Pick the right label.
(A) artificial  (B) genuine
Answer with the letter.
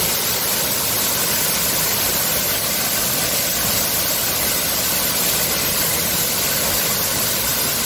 B